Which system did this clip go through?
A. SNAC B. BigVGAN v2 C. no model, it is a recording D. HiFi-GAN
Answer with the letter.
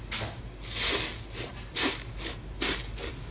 C